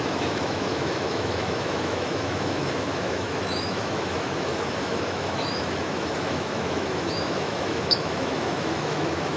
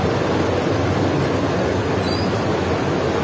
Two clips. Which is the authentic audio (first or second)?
second